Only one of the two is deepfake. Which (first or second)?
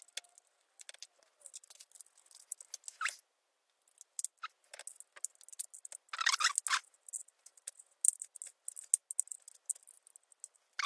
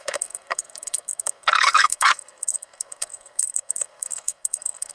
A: second